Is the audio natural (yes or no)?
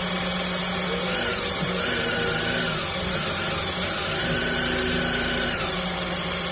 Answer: yes